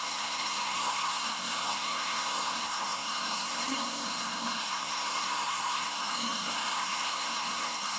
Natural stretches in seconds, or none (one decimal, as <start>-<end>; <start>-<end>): none